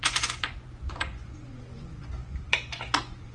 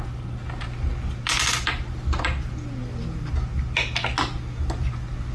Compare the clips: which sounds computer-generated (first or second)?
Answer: first